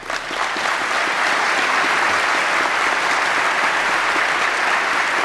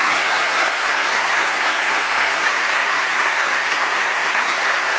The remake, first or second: second